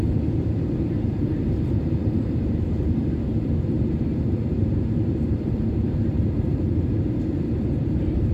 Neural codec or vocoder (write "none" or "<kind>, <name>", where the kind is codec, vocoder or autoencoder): vocoder, BigVGAN v2